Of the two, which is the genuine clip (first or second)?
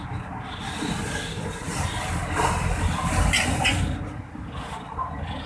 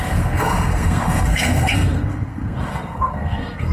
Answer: first